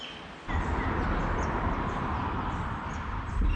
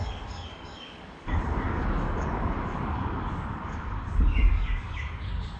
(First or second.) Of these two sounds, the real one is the first